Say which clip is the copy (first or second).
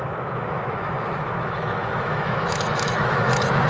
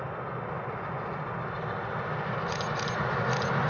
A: first